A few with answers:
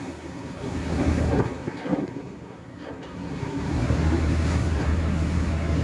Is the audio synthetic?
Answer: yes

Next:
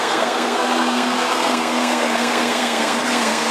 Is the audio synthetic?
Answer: yes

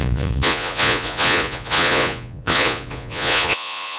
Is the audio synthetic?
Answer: yes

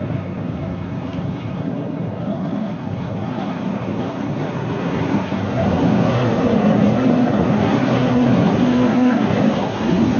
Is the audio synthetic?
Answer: yes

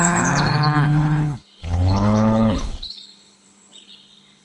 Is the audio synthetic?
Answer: yes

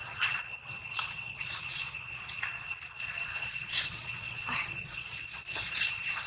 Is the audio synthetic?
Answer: yes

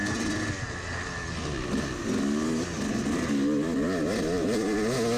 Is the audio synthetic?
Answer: no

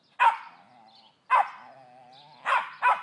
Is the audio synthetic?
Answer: no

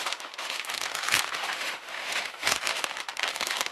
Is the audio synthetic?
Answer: yes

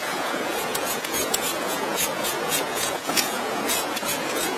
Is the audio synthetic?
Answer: yes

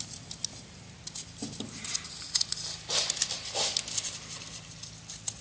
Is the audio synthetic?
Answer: no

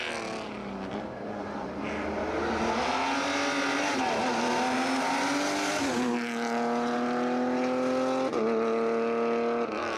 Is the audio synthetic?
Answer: no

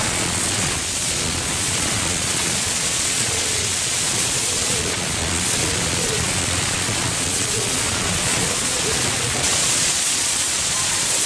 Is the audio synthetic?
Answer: yes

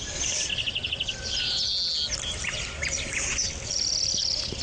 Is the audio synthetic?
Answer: no